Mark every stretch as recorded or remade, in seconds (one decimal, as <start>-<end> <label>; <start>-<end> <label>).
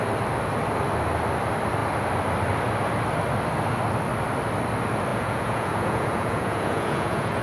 0.0-5.1 recorded; 5.1-7.4 remade